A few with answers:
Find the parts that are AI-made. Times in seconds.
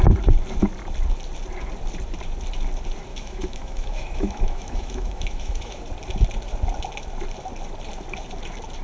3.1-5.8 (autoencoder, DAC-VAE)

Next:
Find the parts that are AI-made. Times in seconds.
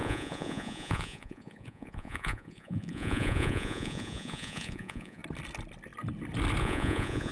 0.0-5.2 (vocoder, Vocos); 6.6-7.3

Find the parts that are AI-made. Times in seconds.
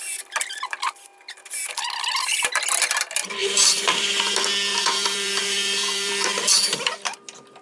3.4-4.3 (vocoder, BigVGAN v2); 4.7-6.3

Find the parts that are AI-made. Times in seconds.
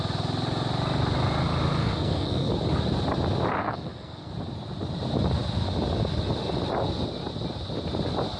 1.8-2.5 (codec, SNAC); 3.6-4.3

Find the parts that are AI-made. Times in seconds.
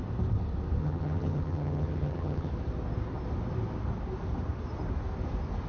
0.8-2.5 (vocoder, HiFi-GAN)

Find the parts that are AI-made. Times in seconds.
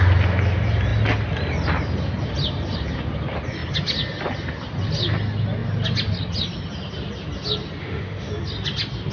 7.8-8.3 (autoencoder, DAC-VAE)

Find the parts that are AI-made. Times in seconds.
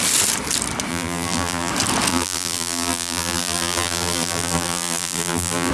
0.9-1.7 (vocoder, BigVGAN v2); 2.1-5.7